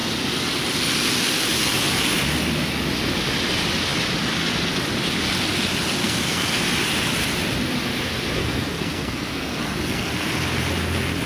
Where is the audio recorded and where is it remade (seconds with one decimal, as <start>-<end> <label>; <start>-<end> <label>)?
0.0-6.0 recorded; 6.0-6.6 remade; 6.6-8.4 recorded; 8.4-10.1 remade; 10.1-11.3 recorded